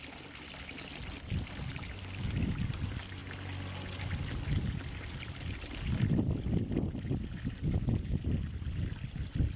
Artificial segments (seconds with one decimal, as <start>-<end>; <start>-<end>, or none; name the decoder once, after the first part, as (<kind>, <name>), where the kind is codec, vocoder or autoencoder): none

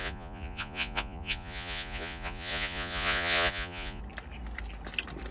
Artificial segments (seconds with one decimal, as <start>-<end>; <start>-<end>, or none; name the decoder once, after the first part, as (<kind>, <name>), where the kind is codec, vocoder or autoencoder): 0.0-4.0 (vocoder, Vocos)

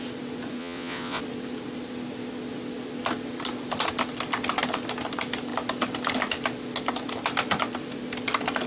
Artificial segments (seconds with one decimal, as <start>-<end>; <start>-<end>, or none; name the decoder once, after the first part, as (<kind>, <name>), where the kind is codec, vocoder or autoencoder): 0.6-1.2 (vocoder, Vocos)

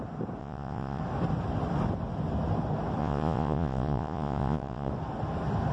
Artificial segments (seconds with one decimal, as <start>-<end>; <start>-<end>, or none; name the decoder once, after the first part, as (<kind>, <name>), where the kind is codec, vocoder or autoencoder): 0.4-1.0 (vocoder, Vocos); 3.0-4.9

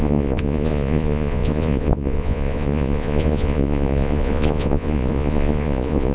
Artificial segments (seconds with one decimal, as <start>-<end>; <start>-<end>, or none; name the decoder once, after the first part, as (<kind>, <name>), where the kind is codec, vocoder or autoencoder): 0.0-6.1 (vocoder, Vocos)

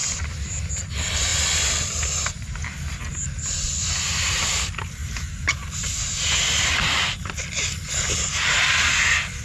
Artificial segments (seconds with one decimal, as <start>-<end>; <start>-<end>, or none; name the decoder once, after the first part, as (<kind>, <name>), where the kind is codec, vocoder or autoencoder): none